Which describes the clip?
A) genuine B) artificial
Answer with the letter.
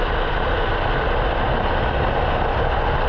A